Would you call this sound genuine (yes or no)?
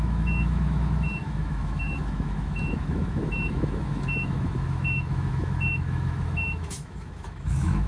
no